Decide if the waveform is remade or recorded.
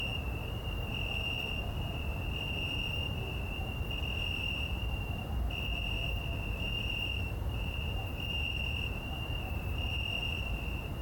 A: remade